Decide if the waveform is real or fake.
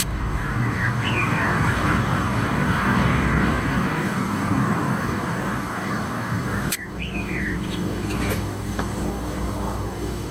fake